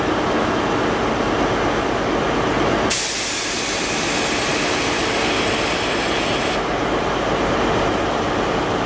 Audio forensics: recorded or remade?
recorded